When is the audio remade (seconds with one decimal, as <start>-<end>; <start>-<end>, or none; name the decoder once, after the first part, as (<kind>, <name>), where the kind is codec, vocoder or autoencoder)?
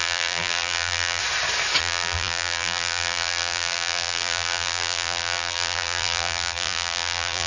0.0-1.2 (vocoder, BigVGAN v2); 1.8-7.5